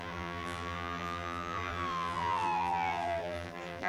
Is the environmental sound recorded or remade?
remade